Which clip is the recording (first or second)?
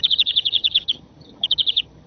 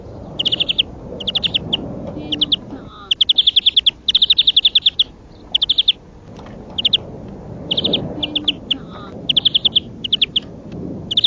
second